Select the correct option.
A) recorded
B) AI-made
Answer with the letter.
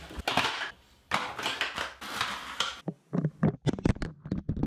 A